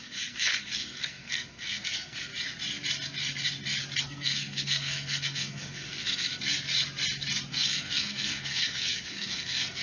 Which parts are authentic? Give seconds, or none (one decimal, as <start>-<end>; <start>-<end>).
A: 2.3-4.0; 6.3-7.5

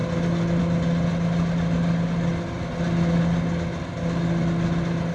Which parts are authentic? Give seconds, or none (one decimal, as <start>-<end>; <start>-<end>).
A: 0.0-5.1

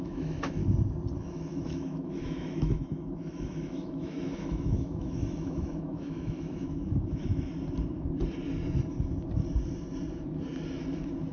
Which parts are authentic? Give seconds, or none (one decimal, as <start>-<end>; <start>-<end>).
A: 0.6-1.2; 7.5-11.3

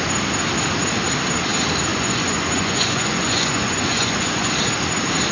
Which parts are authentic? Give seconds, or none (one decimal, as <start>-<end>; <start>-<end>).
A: 0.0-1.9; 4.5-5.3

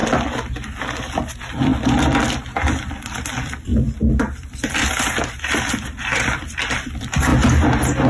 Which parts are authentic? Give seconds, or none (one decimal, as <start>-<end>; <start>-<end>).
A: 0.0-1.0; 1.7-3.1; 3.7-4.2; 7.3-8.1

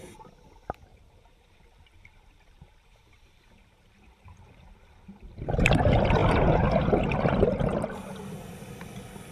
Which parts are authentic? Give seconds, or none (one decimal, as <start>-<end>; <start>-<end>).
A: 0.0-0.9; 5.7-9.3

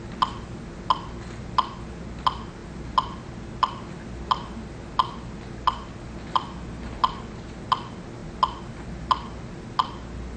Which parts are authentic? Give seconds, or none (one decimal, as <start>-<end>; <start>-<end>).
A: 0.0-10.4

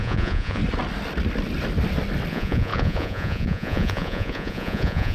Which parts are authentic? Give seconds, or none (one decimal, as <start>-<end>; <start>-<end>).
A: 0.6-2.3